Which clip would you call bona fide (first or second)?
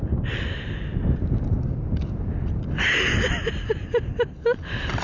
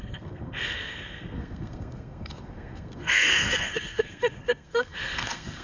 first